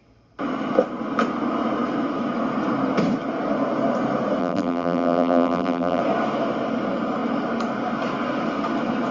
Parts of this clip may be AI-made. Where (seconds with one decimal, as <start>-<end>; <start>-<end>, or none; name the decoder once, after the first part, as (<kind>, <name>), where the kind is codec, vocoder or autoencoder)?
4.4-6.0 (vocoder, BigVGAN v2)